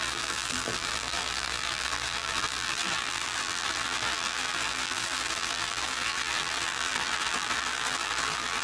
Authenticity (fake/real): fake